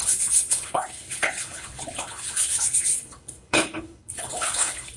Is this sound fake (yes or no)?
yes